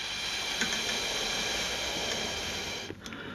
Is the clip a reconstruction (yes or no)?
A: no